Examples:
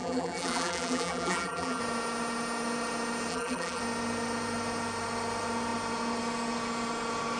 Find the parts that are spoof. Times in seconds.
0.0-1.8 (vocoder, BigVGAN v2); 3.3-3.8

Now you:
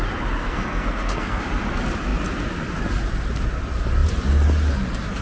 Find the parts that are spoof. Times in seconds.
0.4-1.4 (codec, SNAC)

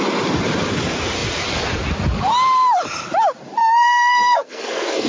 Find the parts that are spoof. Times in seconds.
3.6-5.1 (codec, SNAC)

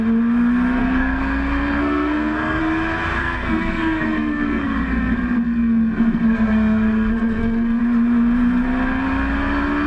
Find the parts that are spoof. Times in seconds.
0.8-2.6 (codec, SNAC); 3.2-7.8

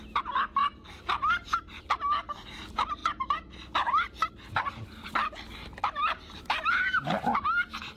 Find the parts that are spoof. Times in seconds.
none